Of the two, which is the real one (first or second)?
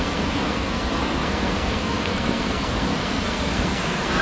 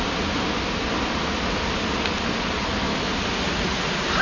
second